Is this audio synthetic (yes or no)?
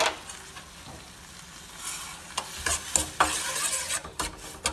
no